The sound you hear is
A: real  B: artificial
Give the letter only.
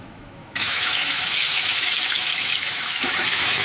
B